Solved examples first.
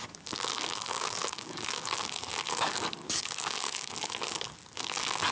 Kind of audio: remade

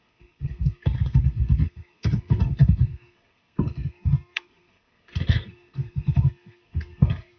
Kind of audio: remade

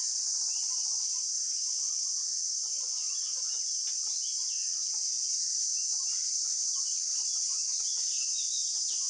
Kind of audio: remade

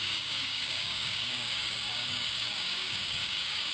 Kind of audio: remade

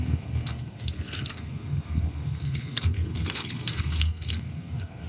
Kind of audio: remade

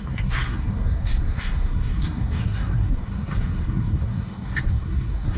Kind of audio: remade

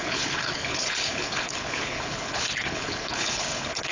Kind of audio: remade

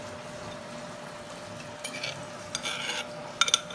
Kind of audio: recorded